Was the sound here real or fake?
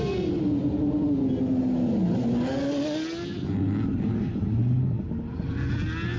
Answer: real